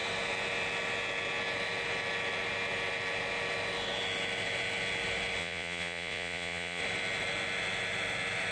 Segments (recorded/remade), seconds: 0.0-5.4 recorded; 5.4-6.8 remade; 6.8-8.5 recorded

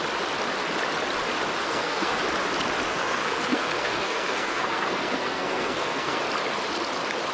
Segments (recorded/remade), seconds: 0.0-1.6 recorded; 1.6-2.2 remade; 2.2-2.9 recorded; 2.9-6.2 remade; 6.2-7.3 recorded

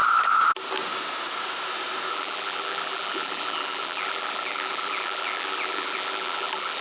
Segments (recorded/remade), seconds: 0.0-2.1 recorded; 2.1-6.8 remade

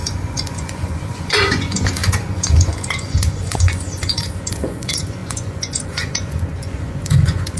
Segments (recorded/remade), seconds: 0.0-7.6 remade

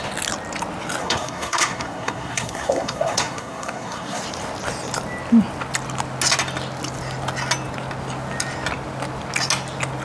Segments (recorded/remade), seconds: 0.0-1.0 recorded; 1.0-4.2 remade; 4.2-10.0 recorded

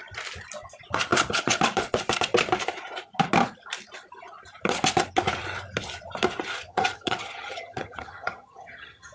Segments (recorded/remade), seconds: 0.0-6.7 recorded; 6.7-9.1 remade

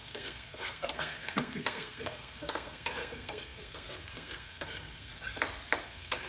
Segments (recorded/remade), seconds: 0.0-5.1 remade; 5.1-5.8 recorded; 5.8-6.3 remade